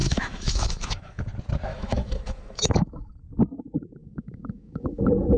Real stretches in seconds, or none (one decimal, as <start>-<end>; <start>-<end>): 1.2-1.7; 3.1-4.0; 5.0-5.4